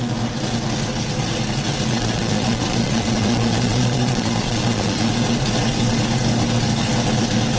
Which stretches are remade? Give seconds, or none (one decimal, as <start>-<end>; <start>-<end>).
1.9-5.1